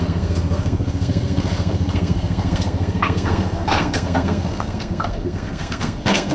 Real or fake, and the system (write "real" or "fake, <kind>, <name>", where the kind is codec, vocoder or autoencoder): fake, codec, SNAC